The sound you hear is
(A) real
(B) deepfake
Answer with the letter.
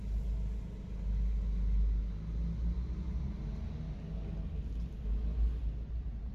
A